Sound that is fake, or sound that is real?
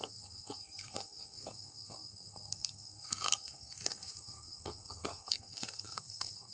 fake